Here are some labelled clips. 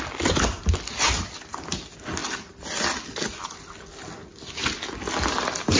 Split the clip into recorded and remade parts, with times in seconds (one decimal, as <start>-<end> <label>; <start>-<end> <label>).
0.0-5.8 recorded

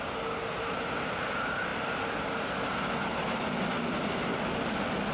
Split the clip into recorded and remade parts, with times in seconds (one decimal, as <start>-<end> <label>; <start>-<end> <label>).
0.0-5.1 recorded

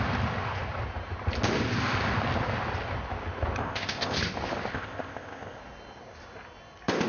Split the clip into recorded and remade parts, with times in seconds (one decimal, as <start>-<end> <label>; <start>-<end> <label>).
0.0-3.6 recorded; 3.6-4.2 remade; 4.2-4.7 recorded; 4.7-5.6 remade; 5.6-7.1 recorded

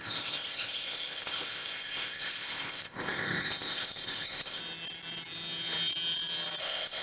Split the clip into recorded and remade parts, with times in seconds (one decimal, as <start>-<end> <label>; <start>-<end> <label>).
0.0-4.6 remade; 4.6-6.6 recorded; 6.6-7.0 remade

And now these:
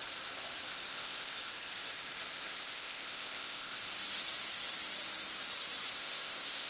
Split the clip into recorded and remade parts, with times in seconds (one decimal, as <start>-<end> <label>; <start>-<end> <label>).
0.0-0.9 recorded; 0.9-1.3 remade; 1.3-2.6 recorded; 2.6-3.9 remade; 3.9-5.9 recorded; 5.9-6.7 remade

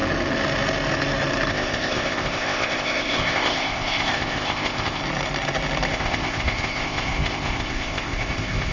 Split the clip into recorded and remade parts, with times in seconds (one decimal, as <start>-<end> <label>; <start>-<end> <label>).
0.0-1.5 recorded; 1.5-5.0 remade; 5.0-5.9 recorded; 5.9-8.7 remade

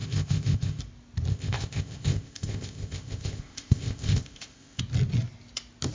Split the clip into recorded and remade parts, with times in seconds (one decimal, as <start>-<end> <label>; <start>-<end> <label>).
0.0-0.8 remade; 0.8-1.3 recorded; 1.3-4.8 remade; 4.8-5.9 recorded